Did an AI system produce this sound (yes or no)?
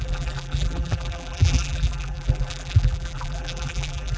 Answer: yes